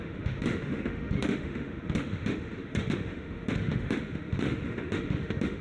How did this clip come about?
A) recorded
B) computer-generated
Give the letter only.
B